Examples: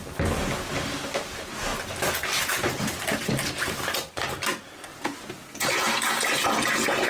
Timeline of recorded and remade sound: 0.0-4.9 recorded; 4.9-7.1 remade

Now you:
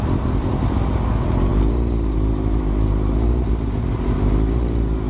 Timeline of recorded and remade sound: 0.0-1.5 recorded; 1.5-3.5 remade; 3.5-5.1 recorded

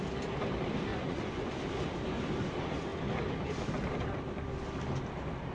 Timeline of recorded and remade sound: 0.0-0.9 recorded; 0.9-1.5 remade; 1.5-5.5 recorded

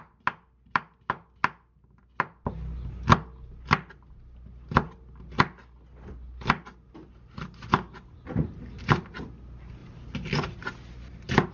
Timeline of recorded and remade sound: 0.0-9.8 recorded; 9.8-10.3 remade; 10.3-11.5 recorded